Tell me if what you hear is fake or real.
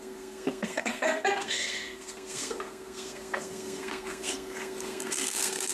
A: fake